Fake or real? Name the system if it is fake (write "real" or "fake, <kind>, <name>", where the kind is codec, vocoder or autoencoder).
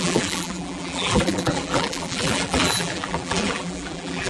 fake, vocoder, BigVGAN v2